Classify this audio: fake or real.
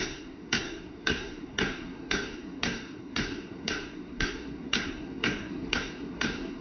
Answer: fake